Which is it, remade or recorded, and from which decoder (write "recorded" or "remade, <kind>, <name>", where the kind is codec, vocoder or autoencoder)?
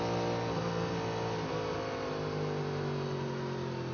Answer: recorded